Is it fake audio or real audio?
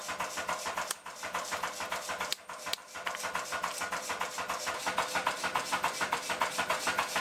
real